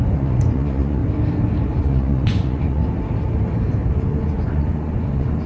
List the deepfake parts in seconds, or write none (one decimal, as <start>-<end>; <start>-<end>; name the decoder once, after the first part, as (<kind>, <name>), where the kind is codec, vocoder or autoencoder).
0.0-1.0 (vocoder, Vocos); 1.8-2.8; 3.9-5.5